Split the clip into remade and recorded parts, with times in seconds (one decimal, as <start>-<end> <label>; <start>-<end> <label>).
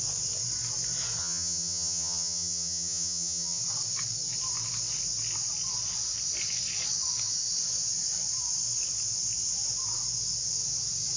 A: 0.0-1.2 recorded; 1.2-3.6 remade; 3.6-11.2 recorded